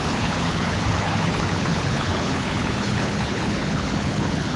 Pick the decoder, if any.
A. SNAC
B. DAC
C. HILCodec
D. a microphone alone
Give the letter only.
C